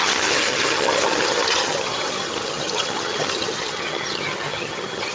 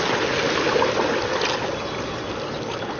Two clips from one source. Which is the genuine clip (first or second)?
second